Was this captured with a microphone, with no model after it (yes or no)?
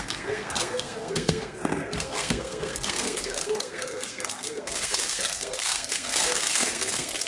no